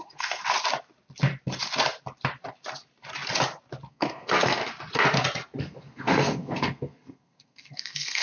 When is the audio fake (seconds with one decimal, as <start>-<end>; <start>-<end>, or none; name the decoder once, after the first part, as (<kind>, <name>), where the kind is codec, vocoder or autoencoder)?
0.0-0.4 (codec, SNAC); 3.9-4.6; 5.6-8.2